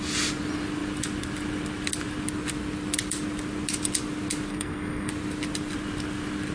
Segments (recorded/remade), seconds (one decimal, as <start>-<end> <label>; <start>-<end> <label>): 0.0-4.5 recorded; 4.5-5.1 remade; 5.1-6.5 recorded